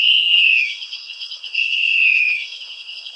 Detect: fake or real fake